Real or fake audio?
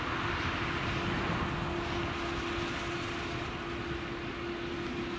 real